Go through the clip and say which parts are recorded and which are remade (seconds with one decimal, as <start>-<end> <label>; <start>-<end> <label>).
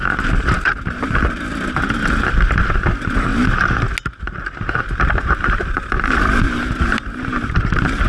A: 0.0-3.3 remade; 3.3-4.6 recorded; 4.6-8.1 remade